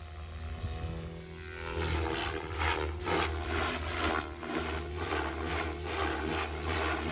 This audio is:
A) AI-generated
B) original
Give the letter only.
B